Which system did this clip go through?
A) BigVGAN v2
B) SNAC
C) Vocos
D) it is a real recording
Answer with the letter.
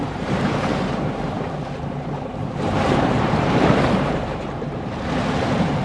A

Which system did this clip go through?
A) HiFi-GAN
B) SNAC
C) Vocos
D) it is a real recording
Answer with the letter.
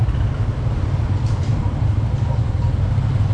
D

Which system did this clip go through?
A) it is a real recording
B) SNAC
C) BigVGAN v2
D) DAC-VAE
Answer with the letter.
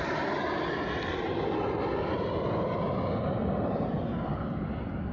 A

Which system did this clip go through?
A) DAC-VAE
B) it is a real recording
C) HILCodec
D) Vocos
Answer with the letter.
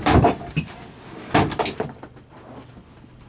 B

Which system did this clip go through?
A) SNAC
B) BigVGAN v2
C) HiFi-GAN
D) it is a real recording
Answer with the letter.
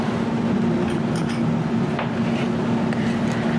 D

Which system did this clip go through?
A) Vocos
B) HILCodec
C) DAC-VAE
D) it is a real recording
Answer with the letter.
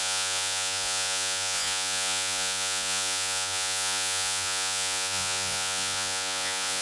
A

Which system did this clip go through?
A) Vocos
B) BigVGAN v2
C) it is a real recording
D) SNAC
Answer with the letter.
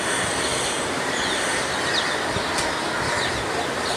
C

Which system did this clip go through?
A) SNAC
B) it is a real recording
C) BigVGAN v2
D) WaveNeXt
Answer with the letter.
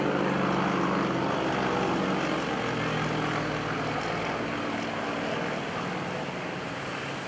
B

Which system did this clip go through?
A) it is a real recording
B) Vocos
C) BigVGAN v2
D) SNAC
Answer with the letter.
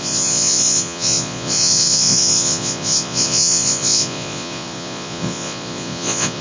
B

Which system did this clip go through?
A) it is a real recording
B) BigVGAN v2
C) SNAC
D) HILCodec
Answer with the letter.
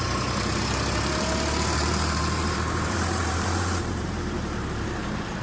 B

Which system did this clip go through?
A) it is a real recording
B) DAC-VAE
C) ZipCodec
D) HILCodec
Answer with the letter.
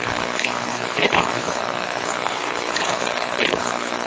D